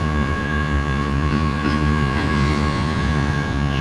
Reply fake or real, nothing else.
fake